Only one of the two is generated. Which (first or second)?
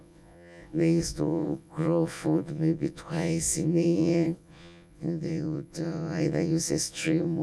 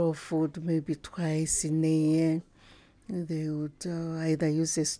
first